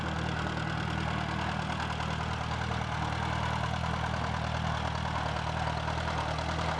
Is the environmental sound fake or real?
real